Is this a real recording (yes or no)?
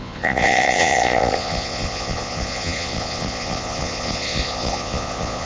no